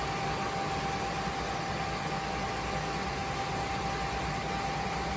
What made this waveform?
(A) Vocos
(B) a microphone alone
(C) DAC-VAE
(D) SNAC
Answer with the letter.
B